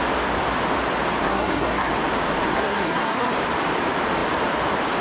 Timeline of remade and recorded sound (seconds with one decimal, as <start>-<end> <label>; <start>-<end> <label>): 0.0-1.2 recorded; 1.2-1.9 remade; 1.9-2.5 recorded; 2.5-3.3 remade; 3.3-5.0 recorded